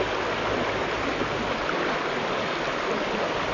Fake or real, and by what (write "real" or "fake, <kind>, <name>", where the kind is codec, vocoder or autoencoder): real